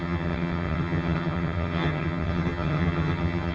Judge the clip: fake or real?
fake